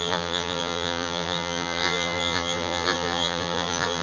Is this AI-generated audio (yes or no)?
yes